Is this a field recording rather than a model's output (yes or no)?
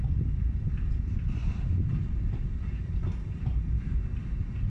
yes